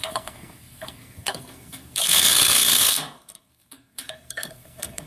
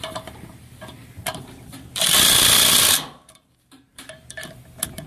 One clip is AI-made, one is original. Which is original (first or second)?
second